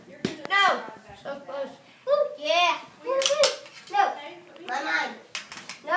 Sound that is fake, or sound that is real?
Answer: real